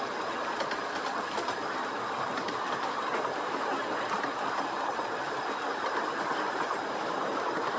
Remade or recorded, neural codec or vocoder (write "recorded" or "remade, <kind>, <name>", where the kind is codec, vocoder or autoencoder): recorded